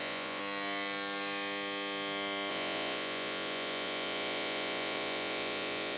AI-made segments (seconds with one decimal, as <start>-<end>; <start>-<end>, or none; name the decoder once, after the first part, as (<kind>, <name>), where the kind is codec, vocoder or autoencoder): 0.0-0.4 (vocoder, Vocos); 2.5-6.0